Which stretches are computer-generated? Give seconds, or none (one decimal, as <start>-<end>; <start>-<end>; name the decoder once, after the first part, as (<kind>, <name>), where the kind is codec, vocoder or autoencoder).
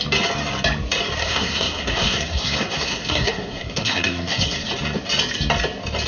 1.2-4.7 (codec, SNAC)